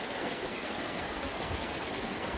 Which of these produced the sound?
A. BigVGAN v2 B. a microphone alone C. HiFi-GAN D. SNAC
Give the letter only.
D